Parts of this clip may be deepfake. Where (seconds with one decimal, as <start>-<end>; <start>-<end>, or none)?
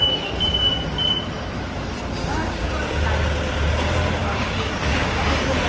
2.2-2.7; 4.2-5.2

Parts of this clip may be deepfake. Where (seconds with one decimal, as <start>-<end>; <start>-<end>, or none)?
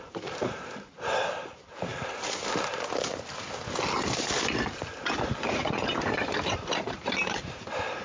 0.0-1.9; 5.0-8.0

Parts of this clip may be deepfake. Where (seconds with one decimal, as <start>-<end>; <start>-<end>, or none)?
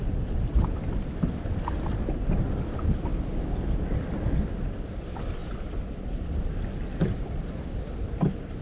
0.0-3.1; 3.8-8.6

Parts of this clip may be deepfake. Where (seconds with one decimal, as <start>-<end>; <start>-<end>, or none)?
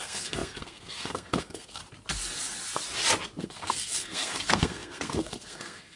0.0-1.8; 3.4-6.0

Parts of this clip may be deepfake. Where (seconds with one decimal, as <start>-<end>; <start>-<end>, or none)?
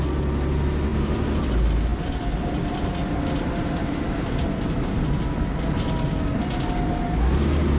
3.0-5.8